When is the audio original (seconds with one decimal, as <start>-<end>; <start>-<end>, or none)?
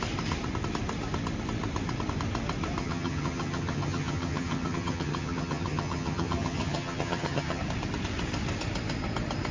0.0-2.8; 7.6-9.5